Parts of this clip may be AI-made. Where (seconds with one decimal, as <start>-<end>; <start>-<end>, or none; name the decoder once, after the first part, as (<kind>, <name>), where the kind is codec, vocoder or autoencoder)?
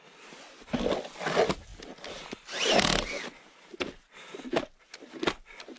none